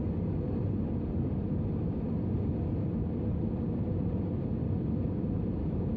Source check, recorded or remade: recorded